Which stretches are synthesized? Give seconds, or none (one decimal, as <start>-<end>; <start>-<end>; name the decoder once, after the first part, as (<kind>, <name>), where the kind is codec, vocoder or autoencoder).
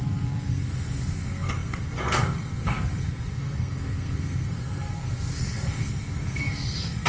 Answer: 0.0-7.1 (codec, SNAC)